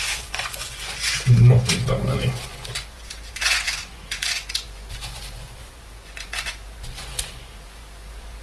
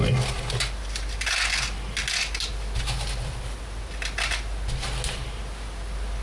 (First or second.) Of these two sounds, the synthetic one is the first